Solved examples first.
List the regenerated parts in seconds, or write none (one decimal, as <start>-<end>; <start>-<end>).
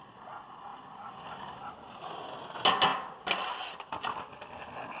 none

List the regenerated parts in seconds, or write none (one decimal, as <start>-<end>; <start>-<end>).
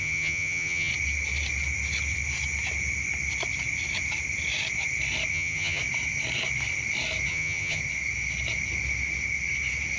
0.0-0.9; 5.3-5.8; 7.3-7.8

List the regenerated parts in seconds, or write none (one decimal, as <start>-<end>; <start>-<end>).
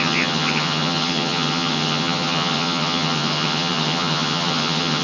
0.0-5.0